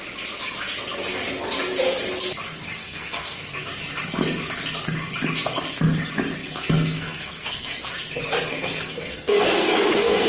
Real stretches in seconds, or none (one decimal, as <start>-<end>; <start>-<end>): 0.0-2.8; 3.5-6.4; 7.9-8.5